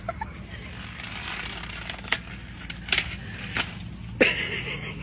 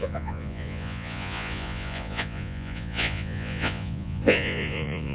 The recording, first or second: first